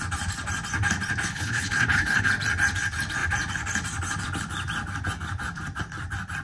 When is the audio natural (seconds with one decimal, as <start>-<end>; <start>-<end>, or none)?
0.0-1.3; 2.3-6.4